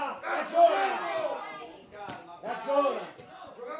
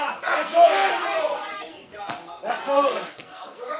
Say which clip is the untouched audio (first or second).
first